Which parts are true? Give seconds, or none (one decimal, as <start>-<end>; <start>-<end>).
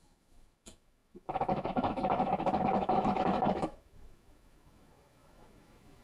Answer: none